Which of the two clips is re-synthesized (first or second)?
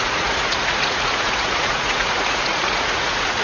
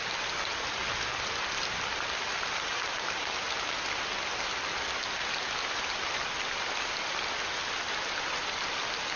first